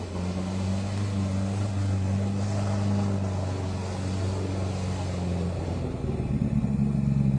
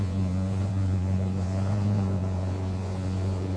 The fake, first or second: second